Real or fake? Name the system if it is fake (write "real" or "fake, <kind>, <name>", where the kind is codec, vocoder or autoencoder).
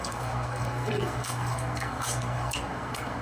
fake, codec, SNAC